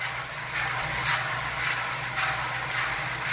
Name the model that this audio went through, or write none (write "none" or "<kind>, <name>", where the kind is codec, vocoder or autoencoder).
none